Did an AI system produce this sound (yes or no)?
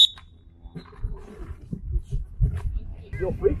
no